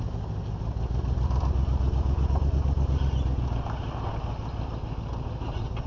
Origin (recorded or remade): recorded